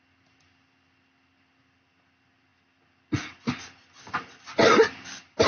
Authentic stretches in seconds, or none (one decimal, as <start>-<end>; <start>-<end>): 0.0-5.5